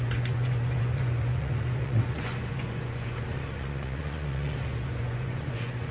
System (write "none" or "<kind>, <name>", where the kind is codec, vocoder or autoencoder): vocoder, Vocos